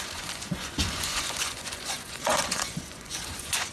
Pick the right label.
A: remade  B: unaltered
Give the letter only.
A